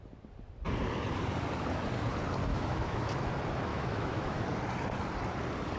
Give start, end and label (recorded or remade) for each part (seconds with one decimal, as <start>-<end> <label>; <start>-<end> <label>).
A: 0.0-2.5 recorded; 2.5-3.3 remade; 3.3-3.7 recorded; 3.7-4.4 remade; 4.4-5.8 recorded